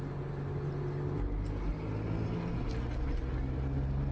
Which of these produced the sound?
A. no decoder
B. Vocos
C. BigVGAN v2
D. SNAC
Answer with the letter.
A